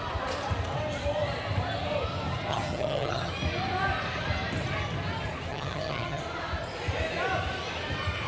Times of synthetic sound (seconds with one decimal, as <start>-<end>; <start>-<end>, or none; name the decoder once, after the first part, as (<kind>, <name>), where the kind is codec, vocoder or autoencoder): 2.5-3.3 (vocoder, HiFi-GAN); 5.5-6.2